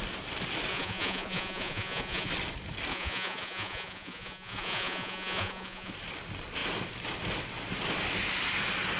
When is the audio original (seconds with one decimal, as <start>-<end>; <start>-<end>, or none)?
0.0-0.7; 2.3-2.9; 5.9-9.0